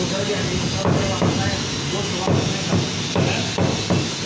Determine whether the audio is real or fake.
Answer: real